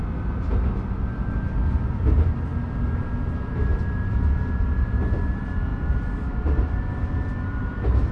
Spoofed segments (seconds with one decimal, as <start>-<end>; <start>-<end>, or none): none